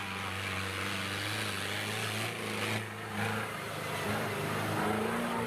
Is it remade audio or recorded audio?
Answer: recorded